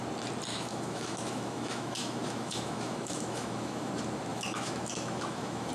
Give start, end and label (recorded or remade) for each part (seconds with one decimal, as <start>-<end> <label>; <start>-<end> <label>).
0.0-0.5 recorded; 0.5-3.9 remade; 3.9-4.3 recorded; 4.3-5.7 remade